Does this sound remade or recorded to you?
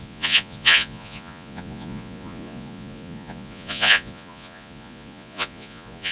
remade